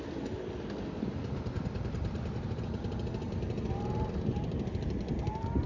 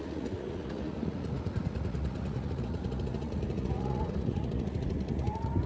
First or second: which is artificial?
second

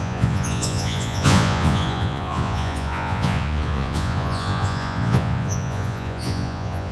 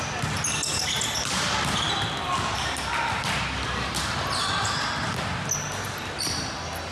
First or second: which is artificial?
first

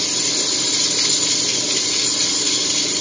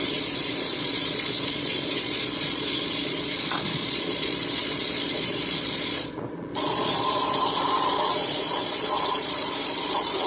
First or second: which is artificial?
second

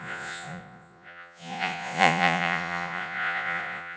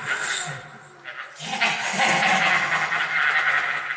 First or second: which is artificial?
first